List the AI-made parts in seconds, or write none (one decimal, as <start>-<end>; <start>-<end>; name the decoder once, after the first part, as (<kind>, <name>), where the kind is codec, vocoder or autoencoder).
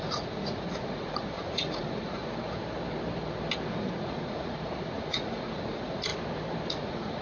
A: 0.0-2.2 (vocoder, Vocos); 3.7-6.1; 6.7-7.2